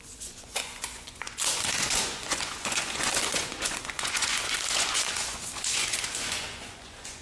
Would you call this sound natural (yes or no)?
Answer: no